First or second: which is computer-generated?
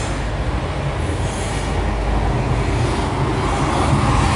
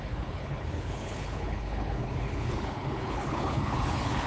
second